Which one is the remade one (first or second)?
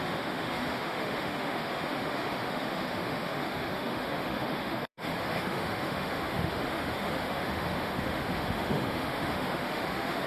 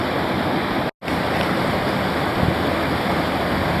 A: first